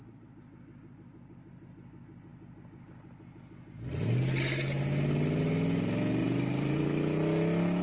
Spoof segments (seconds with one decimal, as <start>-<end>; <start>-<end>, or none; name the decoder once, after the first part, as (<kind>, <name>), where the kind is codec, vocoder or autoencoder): 6.2-6.8 (vocoder, BigVGAN v2)